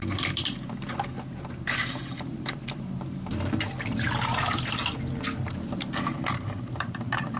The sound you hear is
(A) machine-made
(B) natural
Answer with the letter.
A